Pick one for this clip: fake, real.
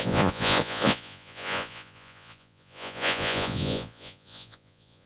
fake